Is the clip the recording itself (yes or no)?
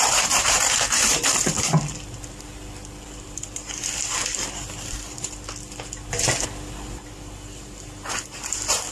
no